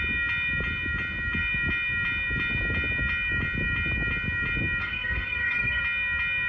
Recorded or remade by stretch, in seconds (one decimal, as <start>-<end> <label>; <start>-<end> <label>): 0.0-4.8 recorded; 4.8-5.8 remade; 5.8-6.5 recorded